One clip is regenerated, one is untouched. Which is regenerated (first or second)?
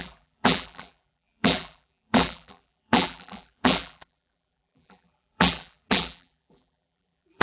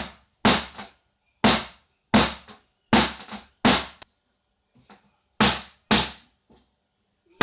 first